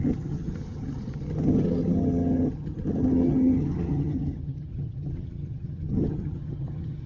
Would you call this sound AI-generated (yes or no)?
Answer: yes